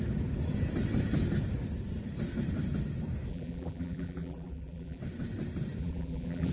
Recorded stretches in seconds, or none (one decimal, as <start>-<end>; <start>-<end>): 0.0-3.3; 5.0-5.8